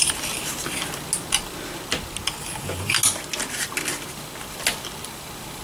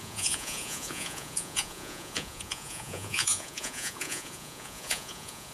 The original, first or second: first